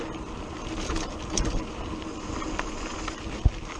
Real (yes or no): yes